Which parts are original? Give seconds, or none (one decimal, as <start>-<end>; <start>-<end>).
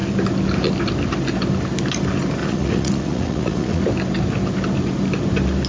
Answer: 0.0-2.4; 3.8-5.7